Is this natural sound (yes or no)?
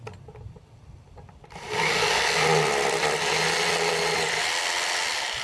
yes